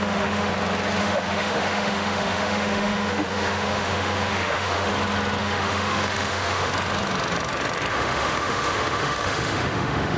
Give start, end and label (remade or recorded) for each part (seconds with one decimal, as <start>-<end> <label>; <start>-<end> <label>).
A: 0.0-0.5 remade; 0.5-1.0 recorded; 1.0-4.9 remade; 4.9-5.4 recorded; 5.4-6.7 remade; 6.7-7.9 recorded; 7.9-10.2 remade